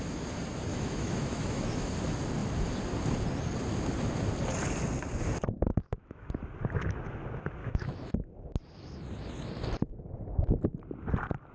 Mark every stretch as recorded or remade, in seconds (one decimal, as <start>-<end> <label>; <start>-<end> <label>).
0.0-0.7 recorded; 0.7-1.9 remade; 1.9-5.7 recorded; 5.7-6.3 remade; 6.3-7.6 recorded; 7.6-8.1 remade; 8.1-11.5 recorded